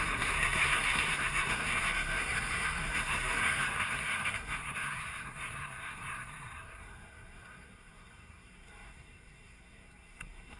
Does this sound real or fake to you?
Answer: fake